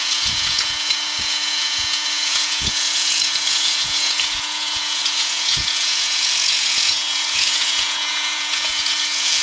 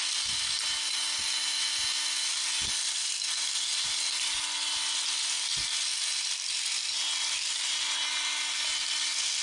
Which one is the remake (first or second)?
first